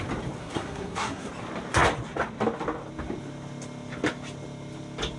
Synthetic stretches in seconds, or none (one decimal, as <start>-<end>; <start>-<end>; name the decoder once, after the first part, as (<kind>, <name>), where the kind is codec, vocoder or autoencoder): 0.4-1.3 (codec, SNAC)